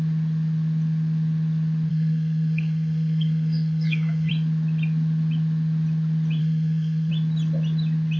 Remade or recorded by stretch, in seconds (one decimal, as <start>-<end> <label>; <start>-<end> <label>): 0.0-1.9 recorded; 1.9-4.3 remade; 4.3-6.4 recorded; 6.4-7.1 remade; 7.1-8.2 recorded